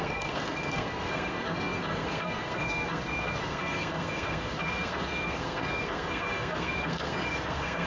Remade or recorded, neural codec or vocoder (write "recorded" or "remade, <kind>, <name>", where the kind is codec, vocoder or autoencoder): remade, codec, SNAC